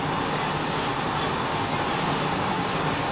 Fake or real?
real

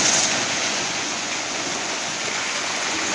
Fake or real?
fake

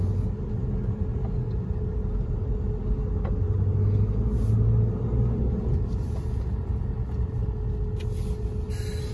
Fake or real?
real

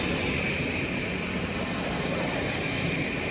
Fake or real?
real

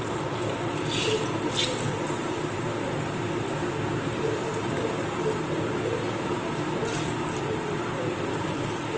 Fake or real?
real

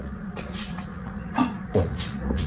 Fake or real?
fake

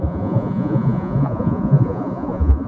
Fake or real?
fake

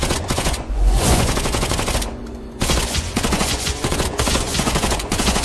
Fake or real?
fake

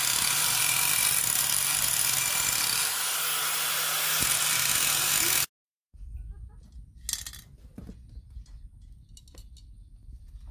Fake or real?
real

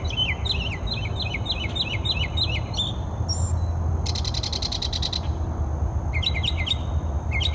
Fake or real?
real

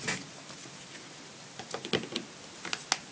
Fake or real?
real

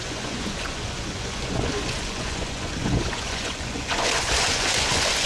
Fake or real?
fake